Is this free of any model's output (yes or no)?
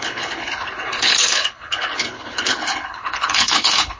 no